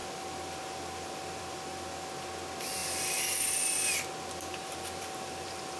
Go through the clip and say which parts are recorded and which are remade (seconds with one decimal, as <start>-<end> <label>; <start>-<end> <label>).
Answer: 0.0-2.8 recorded; 2.8-3.9 remade; 3.9-4.6 recorded; 4.6-5.8 remade

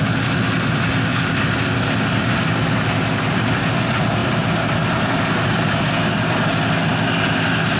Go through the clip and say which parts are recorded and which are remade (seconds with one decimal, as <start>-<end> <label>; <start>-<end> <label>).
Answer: 0.0-4.2 recorded; 4.2-5.8 remade; 5.8-7.8 recorded

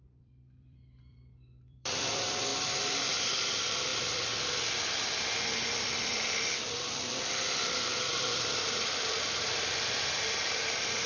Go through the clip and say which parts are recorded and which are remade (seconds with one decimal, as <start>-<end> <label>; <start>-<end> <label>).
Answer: 0.0-3.9 remade; 3.9-8.2 recorded; 8.2-11.1 remade

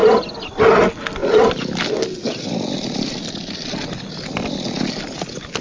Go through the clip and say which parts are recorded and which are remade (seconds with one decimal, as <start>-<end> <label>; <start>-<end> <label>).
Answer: 0.0-1.2 recorded; 1.2-4.5 remade; 4.5-5.6 recorded